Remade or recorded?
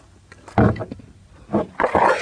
recorded